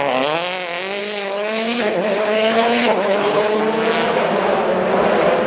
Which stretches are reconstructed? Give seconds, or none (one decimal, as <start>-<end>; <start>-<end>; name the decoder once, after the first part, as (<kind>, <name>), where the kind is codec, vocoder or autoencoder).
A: 1.0-3.6 (codec, HILCodec)